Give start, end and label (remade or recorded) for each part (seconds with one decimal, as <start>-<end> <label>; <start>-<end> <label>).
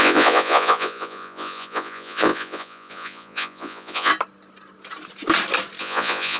0.0-4.1 remade; 4.1-5.8 recorded; 5.8-6.4 remade